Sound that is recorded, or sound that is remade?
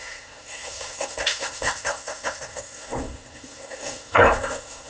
remade